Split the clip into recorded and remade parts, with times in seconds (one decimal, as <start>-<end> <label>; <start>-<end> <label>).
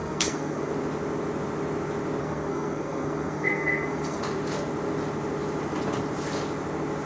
0.0-0.7 remade; 0.7-2.2 recorded; 2.2-4.2 remade; 4.2-7.1 recorded